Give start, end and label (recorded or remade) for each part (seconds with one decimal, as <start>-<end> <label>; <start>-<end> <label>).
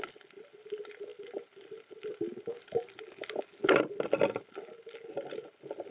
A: 0.0-5.9 recorded